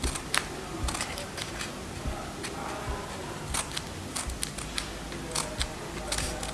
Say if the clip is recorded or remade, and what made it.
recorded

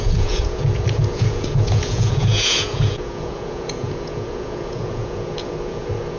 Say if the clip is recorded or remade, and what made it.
remade, vocoder, Vocos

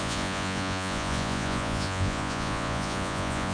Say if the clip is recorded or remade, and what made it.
remade, vocoder, Vocos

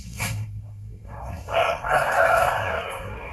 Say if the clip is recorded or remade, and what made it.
remade, codec, SNAC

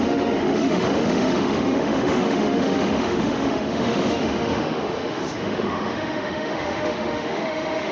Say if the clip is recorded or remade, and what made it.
remade, autoencoder, DAC-VAE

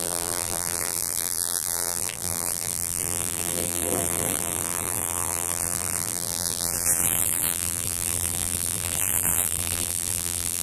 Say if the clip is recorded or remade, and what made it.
remade, vocoder, BigVGAN v2